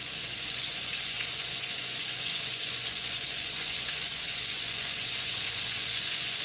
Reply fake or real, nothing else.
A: fake